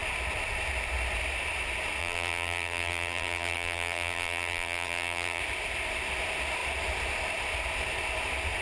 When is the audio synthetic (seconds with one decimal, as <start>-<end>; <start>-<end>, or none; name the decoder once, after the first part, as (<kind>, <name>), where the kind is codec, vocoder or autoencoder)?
2.0-5.4 (vocoder, BigVGAN v2)